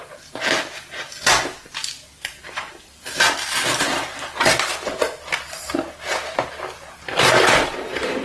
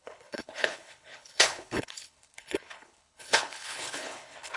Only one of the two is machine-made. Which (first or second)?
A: second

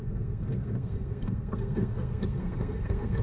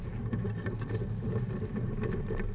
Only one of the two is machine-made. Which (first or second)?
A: first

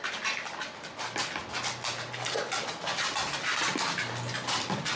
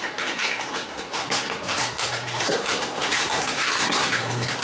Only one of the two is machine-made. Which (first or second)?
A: second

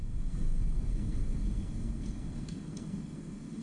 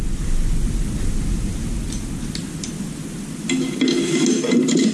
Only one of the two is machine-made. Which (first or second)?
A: first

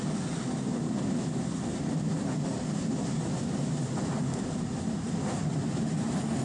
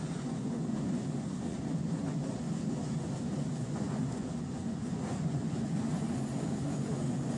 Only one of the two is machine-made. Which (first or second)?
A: second